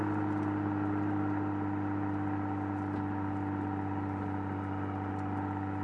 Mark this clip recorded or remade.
recorded